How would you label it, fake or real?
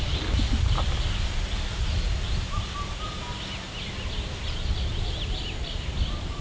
real